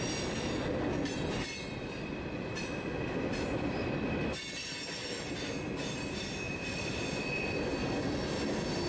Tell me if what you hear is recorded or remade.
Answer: recorded